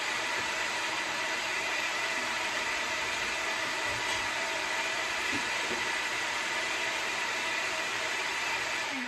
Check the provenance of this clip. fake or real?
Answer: fake